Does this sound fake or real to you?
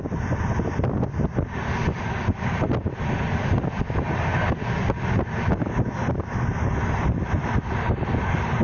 real